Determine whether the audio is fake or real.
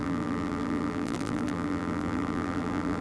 fake